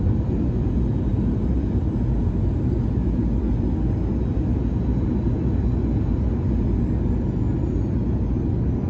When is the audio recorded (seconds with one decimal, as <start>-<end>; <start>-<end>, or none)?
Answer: 0.0-8.9

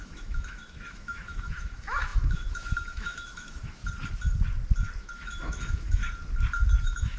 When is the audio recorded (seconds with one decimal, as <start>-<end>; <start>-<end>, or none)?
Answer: 3.8-5.0; 6.0-6.8

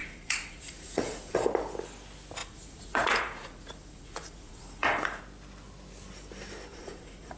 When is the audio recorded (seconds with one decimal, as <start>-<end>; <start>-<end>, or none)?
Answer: 1.5-2.4; 5.2-6.7

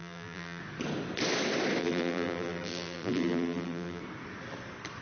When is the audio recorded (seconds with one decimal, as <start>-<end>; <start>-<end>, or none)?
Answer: 0.6-1.8; 4.0-5.0

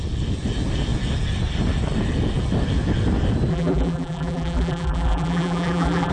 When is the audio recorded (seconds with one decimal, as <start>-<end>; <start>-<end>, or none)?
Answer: 0.0-3.5

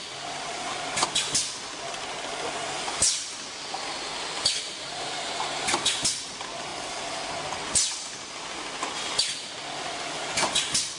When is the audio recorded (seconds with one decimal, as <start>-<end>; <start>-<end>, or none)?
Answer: 0.0-11.0

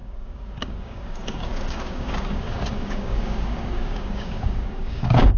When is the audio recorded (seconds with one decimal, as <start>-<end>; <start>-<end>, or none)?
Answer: none